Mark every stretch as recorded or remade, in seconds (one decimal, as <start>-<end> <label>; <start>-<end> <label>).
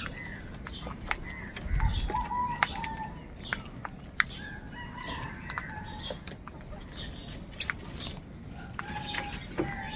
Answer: 0.0-1.9 recorded; 1.9-3.5 remade; 3.5-10.0 recorded